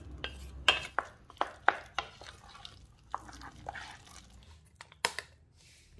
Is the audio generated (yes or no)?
no